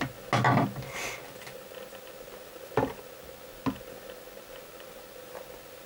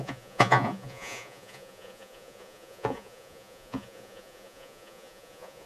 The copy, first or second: second